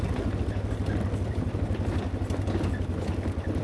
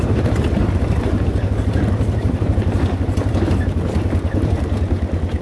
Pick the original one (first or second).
first